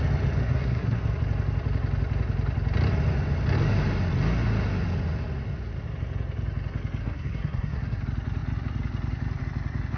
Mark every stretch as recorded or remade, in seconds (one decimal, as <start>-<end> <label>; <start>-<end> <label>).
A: 0.0-0.4 recorded; 0.4-1.0 remade; 1.0-7.0 recorded; 7.0-8.0 remade; 8.0-10.0 recorded